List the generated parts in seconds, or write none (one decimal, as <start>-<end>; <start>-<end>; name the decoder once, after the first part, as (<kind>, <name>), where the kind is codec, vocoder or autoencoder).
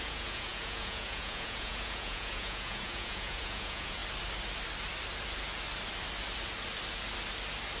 0.0-4.0 (vocoder, Vocos)